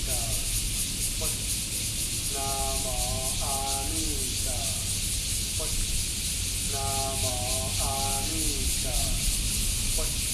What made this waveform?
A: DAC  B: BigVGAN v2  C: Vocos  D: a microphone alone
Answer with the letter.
D